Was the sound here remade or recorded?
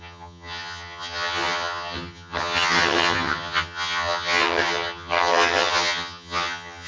remade